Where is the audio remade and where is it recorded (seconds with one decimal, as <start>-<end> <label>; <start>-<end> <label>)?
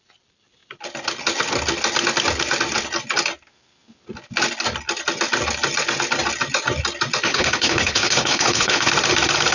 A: 0.0-7.3 recorded; 7.3-8.9 remade; 8.9-9.5 recorded